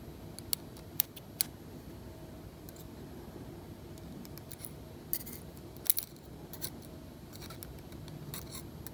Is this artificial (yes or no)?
no